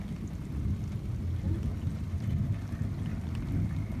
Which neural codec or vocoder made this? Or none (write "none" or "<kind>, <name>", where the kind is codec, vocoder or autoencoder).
none